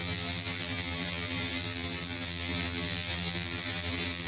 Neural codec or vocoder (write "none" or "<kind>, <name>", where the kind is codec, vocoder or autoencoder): vocoder, BigVGAN v2